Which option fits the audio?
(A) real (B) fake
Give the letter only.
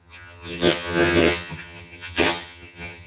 B